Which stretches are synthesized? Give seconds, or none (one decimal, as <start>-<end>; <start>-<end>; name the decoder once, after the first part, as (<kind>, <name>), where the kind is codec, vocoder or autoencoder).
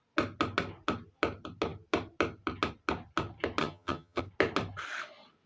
3.6-4.2 (vocoder, HiFi-GAN)